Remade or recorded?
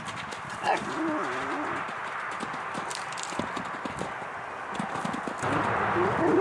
recorded